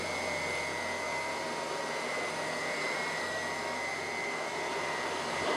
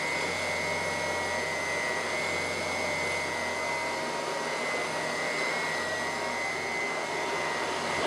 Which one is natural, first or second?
second